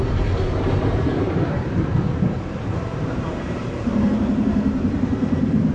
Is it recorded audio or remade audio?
remade